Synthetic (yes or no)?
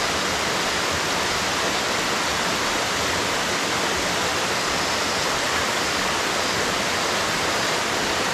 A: no